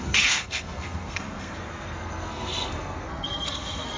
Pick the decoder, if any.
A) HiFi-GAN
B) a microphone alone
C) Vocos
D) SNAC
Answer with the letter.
D